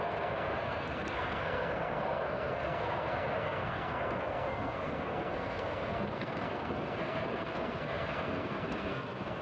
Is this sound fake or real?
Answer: fake